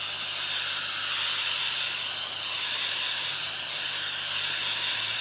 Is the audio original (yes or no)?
yes